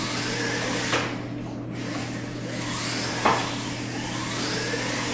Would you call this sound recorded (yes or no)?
yes